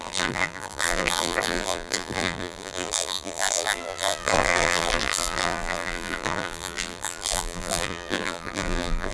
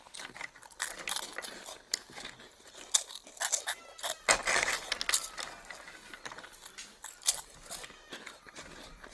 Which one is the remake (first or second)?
first